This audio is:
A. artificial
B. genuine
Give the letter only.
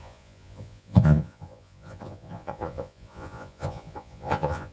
A